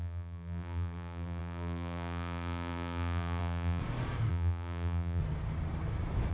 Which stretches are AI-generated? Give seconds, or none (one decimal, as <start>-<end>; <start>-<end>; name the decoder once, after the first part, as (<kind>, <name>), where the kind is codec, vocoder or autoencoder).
0.0-3.8 (vocoder, BigVGAN v2); 4.3-5.2